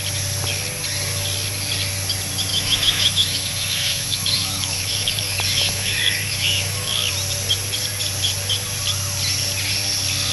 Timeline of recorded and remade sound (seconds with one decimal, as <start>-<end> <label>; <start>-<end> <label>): 0.0-2.5 recorded; 2.5-7.1 remade; 7.1-10.3 recorded